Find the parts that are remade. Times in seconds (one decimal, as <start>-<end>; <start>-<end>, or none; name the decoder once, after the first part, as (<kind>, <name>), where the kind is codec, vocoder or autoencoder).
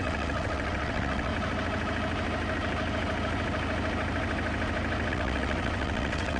0.0-1.3 (vocoder, WaveNeXt); 5.1-6.4